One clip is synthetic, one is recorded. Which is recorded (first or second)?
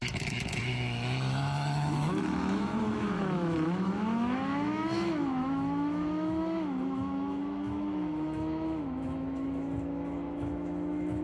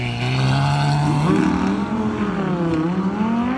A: second